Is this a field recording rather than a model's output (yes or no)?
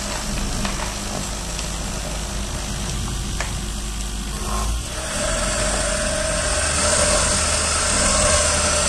yes